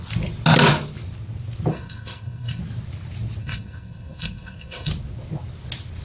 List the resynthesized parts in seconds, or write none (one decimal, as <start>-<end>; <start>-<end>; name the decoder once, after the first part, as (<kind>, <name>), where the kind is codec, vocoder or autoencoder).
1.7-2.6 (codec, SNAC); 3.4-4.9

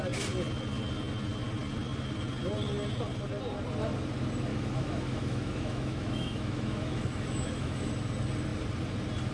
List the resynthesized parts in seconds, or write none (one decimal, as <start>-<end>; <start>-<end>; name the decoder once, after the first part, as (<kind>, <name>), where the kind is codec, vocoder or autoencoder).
4.5-7.9 (autoencoder, DAC-VAE)

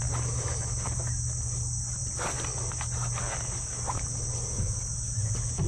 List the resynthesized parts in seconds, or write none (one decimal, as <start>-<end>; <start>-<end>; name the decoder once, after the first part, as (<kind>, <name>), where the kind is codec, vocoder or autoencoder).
none

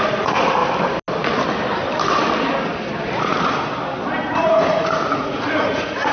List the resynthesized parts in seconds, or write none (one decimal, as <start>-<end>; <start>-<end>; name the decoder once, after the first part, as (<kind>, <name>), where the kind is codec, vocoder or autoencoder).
0.0-0.6 (vocoder, Vocos); 3.2-3.7; 4.3-6.1

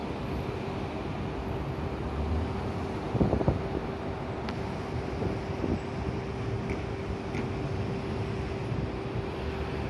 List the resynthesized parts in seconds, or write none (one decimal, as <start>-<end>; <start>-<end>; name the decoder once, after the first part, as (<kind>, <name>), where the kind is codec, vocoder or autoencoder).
none

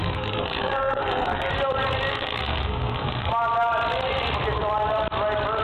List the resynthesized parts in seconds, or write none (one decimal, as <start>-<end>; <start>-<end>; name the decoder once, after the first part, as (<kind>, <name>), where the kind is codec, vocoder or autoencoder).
0.0-1.5 (codec, SNAC); 2.1-3.3